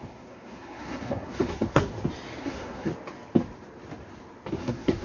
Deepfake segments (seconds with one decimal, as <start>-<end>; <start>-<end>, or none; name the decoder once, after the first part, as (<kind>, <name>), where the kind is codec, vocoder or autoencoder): 0.0-1.9 (codec, SNAC); 2.4-2.9; 4.5-5.0